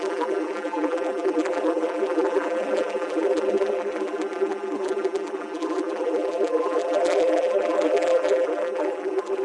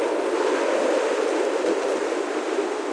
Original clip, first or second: second